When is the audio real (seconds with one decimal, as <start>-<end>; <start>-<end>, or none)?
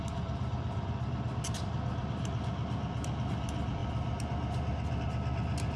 0.0-5.8